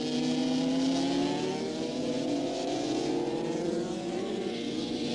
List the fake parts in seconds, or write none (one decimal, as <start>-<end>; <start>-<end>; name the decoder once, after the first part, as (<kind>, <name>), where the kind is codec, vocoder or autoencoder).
1.9-5.1 (vocoder, Vocos)

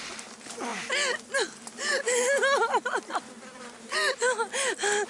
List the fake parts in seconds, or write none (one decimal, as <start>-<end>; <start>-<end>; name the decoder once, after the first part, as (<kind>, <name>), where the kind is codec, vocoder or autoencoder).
none

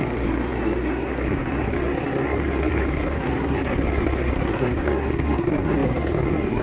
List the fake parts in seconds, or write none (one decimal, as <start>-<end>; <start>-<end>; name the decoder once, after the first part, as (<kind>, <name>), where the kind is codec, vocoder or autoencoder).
0.0-6.6 (codec, SNAC)

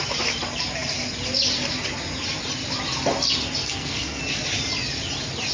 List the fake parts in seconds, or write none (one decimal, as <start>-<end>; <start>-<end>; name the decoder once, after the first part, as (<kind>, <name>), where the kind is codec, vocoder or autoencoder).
3.6-4.2 (codec, SNAC)